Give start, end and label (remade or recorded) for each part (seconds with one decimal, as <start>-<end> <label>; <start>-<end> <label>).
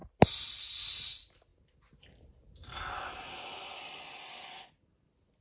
0.0-5.4 recorded